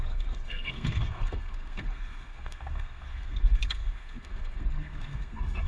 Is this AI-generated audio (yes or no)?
yes